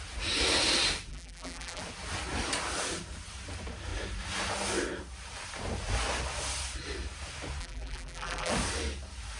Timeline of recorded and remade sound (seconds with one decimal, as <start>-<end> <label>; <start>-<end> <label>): 0.0-1.1 recorded; 1.1-1.8 remade; 1.8-7.6 recorded; 7.6-8.5 remade; 8.5-9.4 recorded

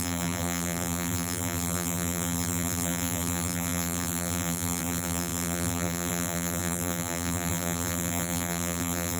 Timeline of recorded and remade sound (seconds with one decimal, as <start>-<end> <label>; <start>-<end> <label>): 0.0-9.2 remade

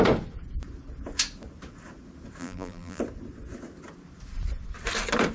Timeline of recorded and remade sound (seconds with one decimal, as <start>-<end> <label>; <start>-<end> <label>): 0.0-2.4 recorded; 2.4-3.0 remade; 3.0-5.3 recorded

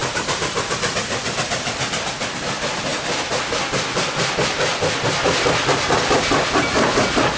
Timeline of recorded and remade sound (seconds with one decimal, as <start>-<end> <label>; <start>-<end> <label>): 0.0-0.7 remade; 0.7-7.4 recorded

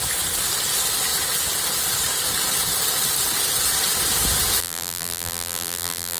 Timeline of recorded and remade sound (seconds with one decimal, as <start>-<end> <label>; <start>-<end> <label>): 0.0-4.6 recorded; 4.6-6.2 remade